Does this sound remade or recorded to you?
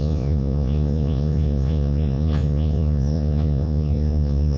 remade